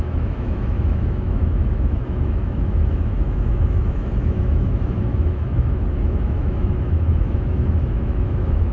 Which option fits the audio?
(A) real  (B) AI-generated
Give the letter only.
B